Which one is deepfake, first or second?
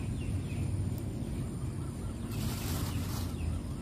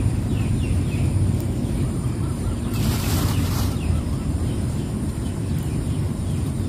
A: second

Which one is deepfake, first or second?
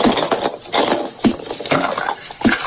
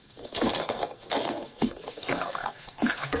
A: second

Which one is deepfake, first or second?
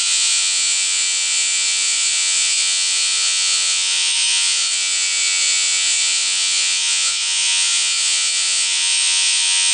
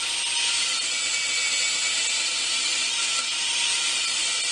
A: first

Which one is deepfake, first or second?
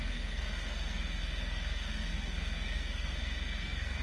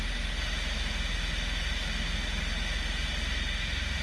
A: first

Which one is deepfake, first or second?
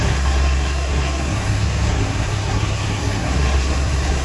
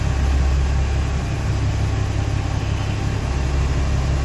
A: first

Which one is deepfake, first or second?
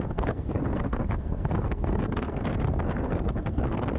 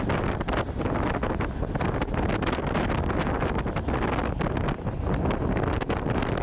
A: first